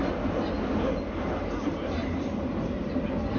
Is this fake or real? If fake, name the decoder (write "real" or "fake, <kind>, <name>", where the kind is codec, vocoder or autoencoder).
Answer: real